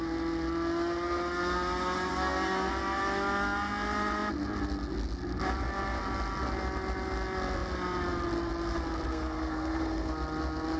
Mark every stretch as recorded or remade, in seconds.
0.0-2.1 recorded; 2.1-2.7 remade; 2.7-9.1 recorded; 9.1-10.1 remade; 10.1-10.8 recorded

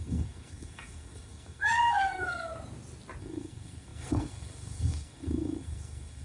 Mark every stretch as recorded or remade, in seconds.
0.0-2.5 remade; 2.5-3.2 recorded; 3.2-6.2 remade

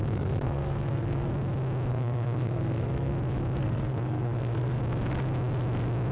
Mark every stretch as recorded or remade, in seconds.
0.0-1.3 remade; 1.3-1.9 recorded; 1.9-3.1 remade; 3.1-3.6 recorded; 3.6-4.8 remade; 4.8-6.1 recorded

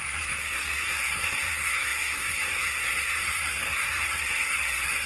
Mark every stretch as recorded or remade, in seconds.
0.0-5.1 remade

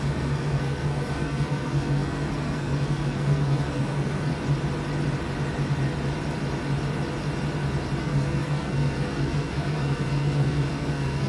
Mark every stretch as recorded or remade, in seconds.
0.0-4.3 remade; 4.3-8.0 recorded; 8.0-11.3 remade

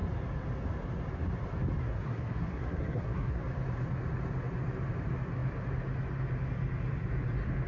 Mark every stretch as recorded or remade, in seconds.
0.0-1.8 recorded; 1.8-3.4 remade; 3.4-7.7 recorded

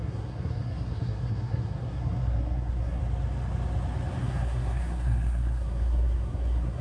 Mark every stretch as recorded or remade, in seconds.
0.0-3.0 remade; 3.0-4.2 recorded; 4.2-6.8 remade

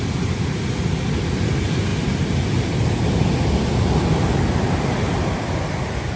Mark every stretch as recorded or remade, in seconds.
0.0-6.2 recorded